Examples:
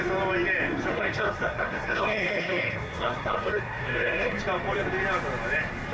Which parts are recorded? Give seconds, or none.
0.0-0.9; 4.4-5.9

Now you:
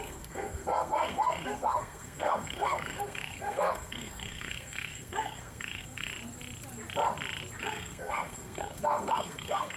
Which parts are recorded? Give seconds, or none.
6.1-7.6

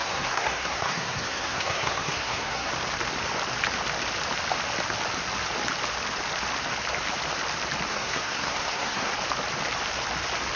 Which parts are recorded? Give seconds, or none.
2.7-7.9; 9.1-10.6

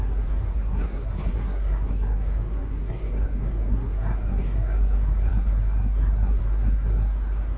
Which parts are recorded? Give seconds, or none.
none

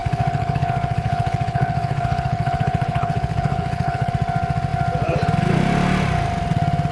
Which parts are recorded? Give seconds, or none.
4.1-6.9